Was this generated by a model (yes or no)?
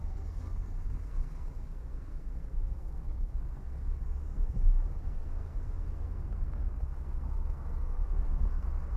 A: yes